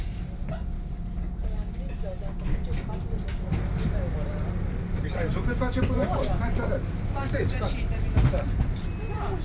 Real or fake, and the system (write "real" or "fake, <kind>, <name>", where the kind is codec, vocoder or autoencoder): real